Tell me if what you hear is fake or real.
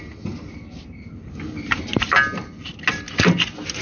real